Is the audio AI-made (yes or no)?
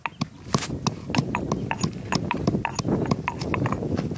no